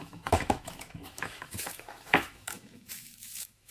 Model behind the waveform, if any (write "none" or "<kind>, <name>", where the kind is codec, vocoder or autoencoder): autoencoder, DAC-VAE